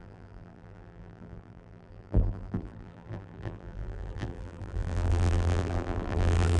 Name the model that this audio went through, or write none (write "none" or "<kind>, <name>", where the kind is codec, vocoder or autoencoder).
vocoder, BigVGAN v2